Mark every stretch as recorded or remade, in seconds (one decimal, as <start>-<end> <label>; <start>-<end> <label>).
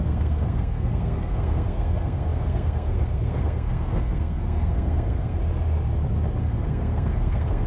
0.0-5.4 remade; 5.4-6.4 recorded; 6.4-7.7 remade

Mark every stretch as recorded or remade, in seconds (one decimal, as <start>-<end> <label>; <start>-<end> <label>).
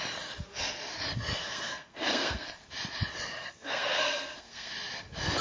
0.0-1.4 recorded; 1.4-2.5 remade; 2.5-3.3 recorded; 3.3-4.7 remade; 4.7-5.4 recorded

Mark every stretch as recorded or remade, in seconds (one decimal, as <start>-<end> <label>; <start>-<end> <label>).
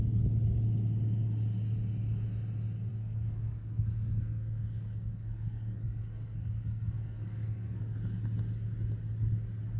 0.0-2.9 recorded; 2.9-7.8 remade; 7.8-9.8 recorded